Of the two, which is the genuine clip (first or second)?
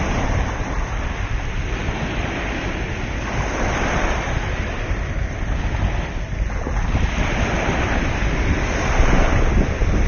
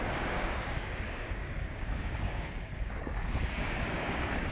first